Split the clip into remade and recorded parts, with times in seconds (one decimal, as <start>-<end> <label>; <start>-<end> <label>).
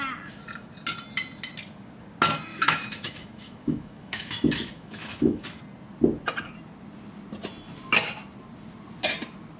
0.0-2.5 recorded; 2.5-5.6 remade; 5.6-9.6 recorded